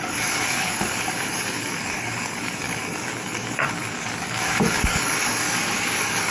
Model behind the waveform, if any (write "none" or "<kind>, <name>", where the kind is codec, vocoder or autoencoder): codec, DAC